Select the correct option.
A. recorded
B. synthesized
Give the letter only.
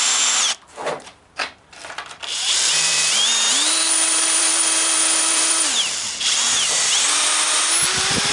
B